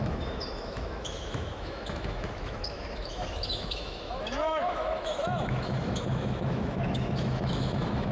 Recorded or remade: remade